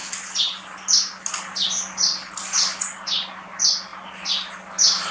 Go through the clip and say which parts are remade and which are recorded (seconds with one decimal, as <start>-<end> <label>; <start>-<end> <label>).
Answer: 0.0-5.1 recorded